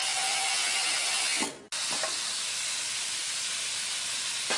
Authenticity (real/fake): real